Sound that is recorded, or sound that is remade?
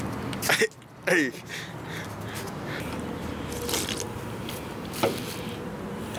recorded